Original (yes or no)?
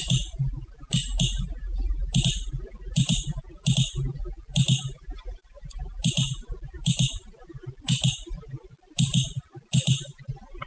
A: yes